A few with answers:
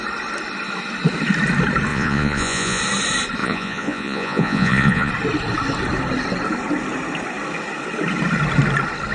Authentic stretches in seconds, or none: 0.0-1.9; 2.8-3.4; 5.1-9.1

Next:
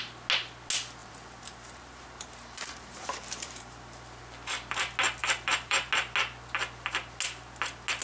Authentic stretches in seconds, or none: 0.0-1.0; 4.2-5.2; 5.9-8.0